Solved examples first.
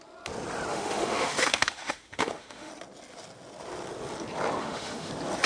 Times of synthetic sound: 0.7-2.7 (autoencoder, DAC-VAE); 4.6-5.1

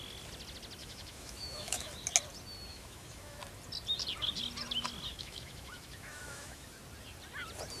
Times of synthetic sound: 0.8-1.9 (autoencoder, DAC-VAE); 2.7-3.4; 5.1-6.8

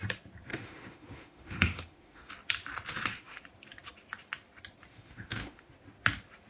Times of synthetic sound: 0.5-2.3 (autoencoder, DAC-VAE); 2.9-3.4; 4.9-5.7

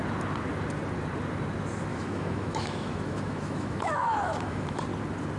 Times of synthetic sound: 1.9-4.8 (autoencoder, DAC-VAE)

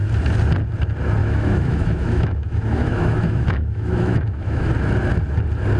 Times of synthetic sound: 1.2-4.7 (autoencoder, DAC-VAE)